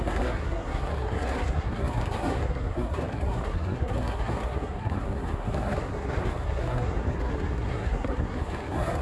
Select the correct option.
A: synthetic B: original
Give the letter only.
A